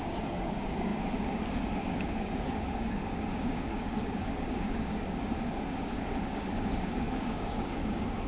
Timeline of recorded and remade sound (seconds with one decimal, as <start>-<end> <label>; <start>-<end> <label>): 0.0-8.3 remade